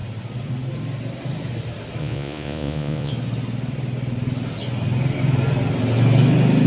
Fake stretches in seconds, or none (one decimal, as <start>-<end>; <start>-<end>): 2.0-3.1